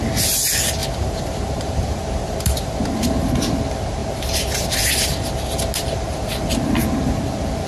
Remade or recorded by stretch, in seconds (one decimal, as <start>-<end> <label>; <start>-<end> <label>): 0.0-0.8 recorded; 0.8-3.3 remade; 3.3-7.7 recorded